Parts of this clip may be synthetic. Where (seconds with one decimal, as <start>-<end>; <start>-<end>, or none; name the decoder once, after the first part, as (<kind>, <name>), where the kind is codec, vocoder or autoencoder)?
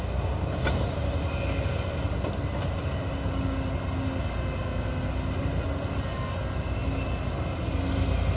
none